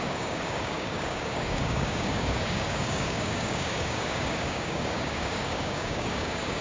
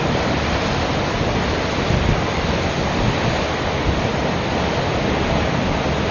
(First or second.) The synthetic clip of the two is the first